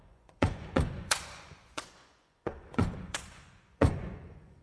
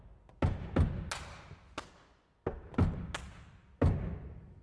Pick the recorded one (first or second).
second